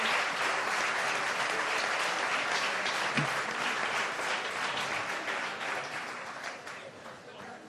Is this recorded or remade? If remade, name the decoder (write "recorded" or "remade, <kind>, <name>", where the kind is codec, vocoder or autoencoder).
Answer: remade, vocoder, BigVGAN v2